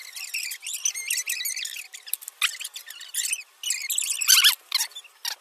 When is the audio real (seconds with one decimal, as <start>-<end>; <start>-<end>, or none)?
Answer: 0.0-5.4